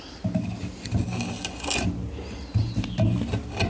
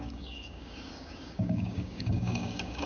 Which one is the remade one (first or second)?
second